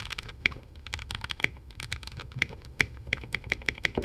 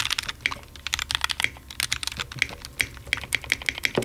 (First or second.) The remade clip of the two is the first